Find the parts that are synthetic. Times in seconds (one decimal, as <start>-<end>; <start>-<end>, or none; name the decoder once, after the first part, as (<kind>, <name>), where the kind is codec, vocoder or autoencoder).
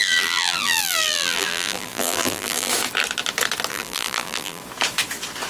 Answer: 0.0-2.7 (vocoder, BigVGAN v2); 3.7-4.6